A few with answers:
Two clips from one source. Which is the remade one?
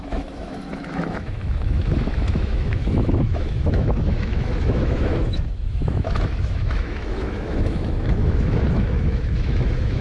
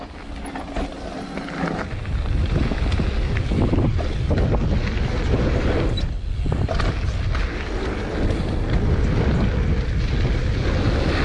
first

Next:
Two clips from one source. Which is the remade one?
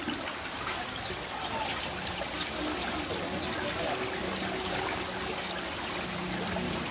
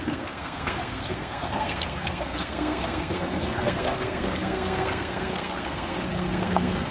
second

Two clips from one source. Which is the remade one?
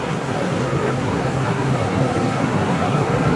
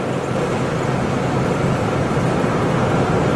first